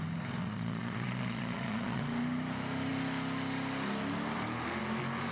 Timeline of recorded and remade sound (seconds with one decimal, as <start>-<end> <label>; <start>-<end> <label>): 0.0-0.4 recorded; 0.4-2.0 remade; 2.0-5.3 recorded